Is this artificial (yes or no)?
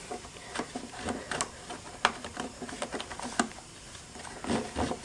no